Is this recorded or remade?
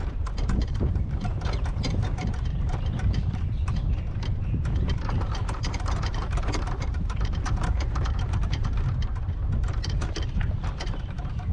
remade